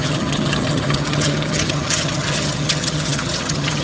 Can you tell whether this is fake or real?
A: fake